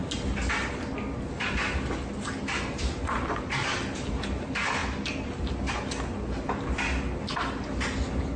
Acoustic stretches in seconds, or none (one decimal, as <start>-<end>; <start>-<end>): 0.0-8.4